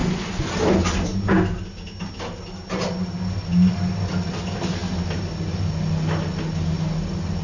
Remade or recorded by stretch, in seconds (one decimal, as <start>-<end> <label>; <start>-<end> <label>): 0.0-7.4 recorded